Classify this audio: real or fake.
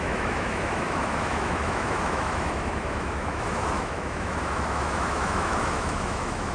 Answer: fake